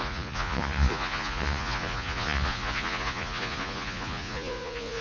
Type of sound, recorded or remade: remade